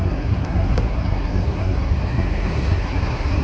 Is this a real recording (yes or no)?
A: no